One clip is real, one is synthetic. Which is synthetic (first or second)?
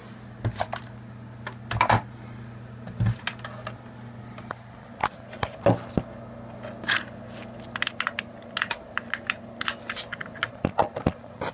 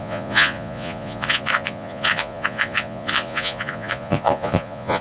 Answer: second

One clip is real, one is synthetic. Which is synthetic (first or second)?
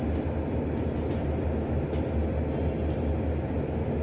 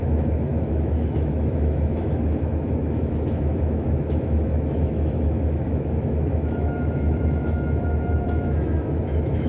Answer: second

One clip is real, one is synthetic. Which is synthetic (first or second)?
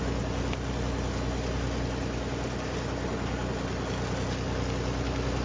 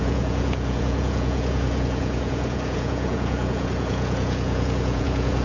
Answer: second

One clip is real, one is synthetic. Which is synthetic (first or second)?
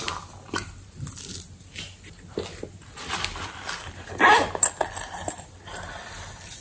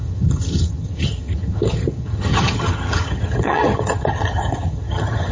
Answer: second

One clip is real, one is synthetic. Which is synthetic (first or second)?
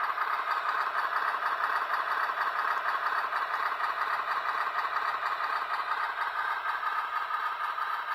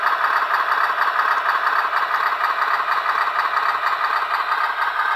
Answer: first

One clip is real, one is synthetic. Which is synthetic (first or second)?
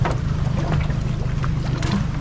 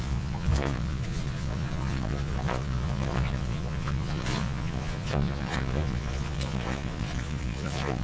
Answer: second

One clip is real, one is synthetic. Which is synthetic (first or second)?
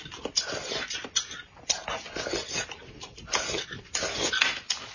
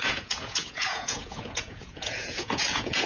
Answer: second